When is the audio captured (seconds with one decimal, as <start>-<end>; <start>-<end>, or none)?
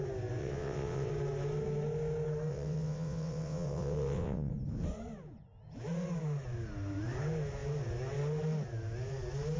0.0-0.4; 1.1-2.5; 4.5-9.6